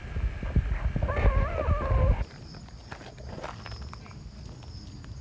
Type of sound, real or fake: real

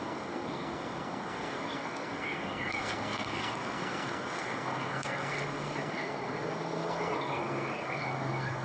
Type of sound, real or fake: fake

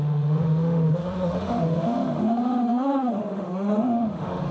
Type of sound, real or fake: fake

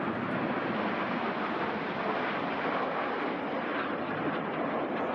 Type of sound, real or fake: real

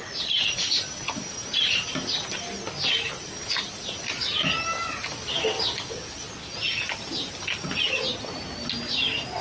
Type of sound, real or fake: real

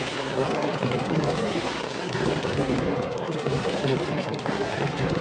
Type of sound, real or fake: fake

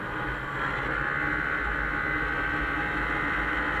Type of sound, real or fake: real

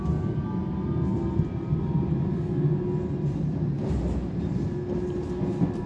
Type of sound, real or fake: real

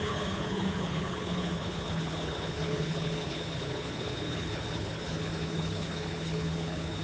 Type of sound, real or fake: fake